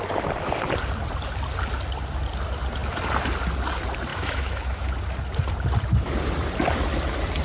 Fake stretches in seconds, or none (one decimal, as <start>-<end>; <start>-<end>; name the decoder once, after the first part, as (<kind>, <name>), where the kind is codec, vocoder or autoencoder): 4.1-4.9 (autoencoder, DAC-VAE)